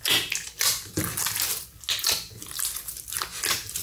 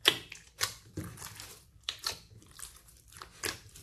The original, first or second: first